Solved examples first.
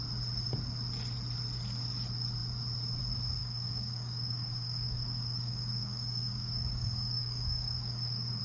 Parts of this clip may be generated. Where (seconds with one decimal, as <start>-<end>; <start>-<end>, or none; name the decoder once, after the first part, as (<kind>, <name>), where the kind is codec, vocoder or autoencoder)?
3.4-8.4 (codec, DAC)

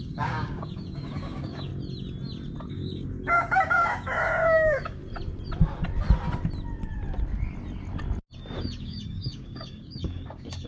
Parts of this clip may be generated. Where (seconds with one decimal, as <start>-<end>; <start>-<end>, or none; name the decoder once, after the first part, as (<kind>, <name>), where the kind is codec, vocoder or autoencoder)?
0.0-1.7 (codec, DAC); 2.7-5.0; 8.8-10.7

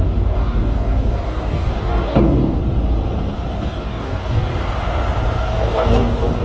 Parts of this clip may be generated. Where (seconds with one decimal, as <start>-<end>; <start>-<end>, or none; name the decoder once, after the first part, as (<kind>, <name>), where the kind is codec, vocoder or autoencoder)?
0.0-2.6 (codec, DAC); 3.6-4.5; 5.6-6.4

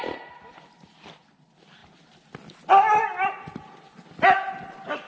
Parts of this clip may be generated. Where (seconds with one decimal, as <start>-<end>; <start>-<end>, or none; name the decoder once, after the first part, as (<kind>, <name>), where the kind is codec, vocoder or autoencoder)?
none

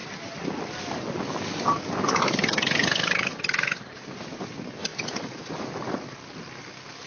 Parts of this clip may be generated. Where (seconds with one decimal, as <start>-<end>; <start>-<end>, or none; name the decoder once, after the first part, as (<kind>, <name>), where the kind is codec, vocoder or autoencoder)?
none

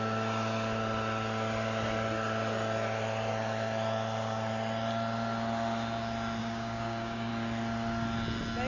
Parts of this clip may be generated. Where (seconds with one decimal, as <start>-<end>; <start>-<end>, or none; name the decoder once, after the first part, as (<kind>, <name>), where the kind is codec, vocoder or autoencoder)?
6.4-7.3 (codec, DAC)

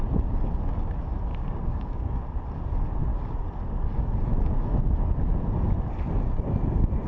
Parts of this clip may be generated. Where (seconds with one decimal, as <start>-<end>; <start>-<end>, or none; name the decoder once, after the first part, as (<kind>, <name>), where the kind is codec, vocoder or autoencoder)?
1.3-2.2 (codec, DAC)

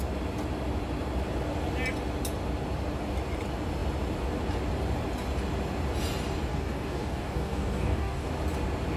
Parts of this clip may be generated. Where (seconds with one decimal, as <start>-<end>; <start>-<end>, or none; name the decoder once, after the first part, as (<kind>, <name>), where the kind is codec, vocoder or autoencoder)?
6.5-8.3 (codec, DAC)